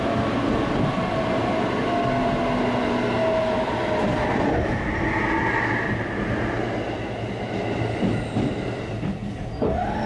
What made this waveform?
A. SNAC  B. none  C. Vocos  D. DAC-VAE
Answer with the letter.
B